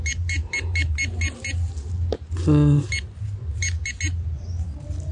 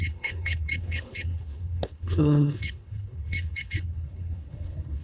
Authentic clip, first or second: first